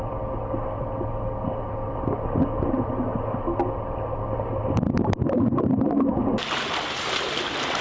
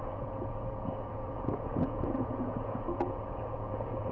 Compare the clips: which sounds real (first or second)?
first